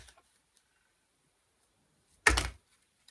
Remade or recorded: recorded